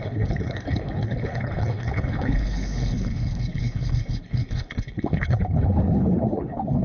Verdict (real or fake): fake